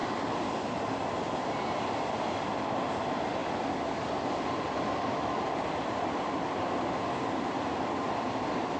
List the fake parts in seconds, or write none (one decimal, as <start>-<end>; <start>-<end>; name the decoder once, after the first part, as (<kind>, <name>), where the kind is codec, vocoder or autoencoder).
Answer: none